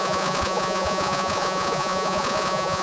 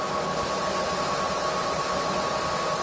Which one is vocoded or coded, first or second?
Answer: first